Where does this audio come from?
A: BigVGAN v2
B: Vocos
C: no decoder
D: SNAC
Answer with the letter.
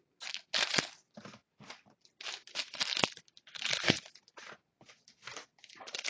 C